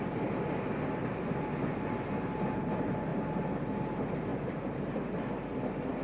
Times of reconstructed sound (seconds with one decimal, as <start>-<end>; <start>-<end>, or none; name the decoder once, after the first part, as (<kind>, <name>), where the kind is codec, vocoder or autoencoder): 1.0-2.7 (vocoder, BigVGAN v2); 3.1-3.7; 4.3-4.9